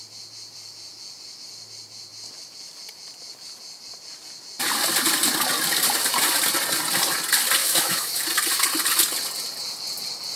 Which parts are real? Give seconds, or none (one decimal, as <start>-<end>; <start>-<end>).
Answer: 0.0-7.6; 8.2-10.4